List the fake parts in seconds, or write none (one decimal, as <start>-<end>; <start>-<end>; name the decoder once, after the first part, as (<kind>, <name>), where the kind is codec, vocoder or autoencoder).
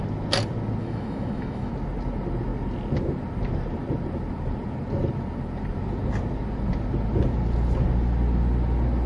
0.8-1.7 (autoencoder, DAC-VAE)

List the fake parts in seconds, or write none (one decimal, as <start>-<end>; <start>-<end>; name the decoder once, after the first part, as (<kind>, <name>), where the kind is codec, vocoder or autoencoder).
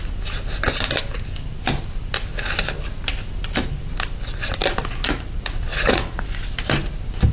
5.0-6.2 (vocoder, Vocos)